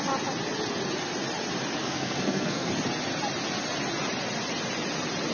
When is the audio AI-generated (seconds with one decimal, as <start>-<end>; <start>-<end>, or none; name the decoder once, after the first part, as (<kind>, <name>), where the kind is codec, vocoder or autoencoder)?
1.8-2.7 (codec, SNAC)

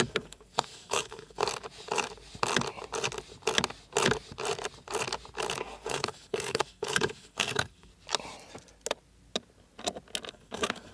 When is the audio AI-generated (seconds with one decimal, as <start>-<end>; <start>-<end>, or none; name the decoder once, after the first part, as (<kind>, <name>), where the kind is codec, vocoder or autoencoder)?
0.0-1.4 (codec, SNAC); 5.6-7.9; 10.3-10.9

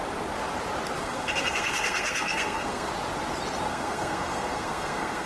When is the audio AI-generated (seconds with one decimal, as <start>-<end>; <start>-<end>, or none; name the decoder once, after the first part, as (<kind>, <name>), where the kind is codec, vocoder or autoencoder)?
1.0-2.9 (codec, SNAC); 3.7-5.3